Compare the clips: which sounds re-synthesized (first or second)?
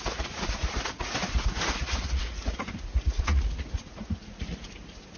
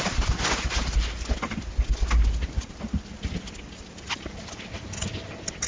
first